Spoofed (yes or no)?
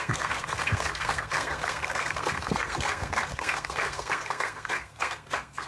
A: yes